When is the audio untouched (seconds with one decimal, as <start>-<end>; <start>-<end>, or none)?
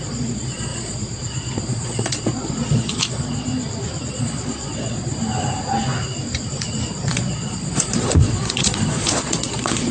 3.5-4.1; 5.1-6.9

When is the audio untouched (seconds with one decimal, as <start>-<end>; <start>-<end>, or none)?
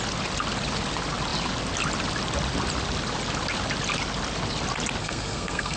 0.0-5.0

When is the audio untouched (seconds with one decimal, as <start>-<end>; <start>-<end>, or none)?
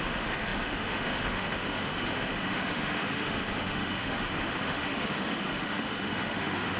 none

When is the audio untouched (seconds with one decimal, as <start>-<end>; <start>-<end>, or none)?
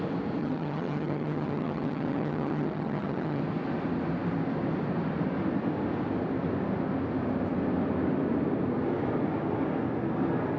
0.0-0.4; 3.4-10.6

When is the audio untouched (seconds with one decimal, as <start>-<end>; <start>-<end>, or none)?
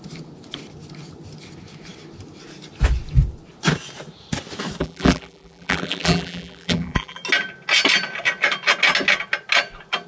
0.0-4.8; 7.2-10.1